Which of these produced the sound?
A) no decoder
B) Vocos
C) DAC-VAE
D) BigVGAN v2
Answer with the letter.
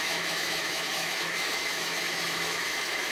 C